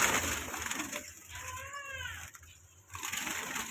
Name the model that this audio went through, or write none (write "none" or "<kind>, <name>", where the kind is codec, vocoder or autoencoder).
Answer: none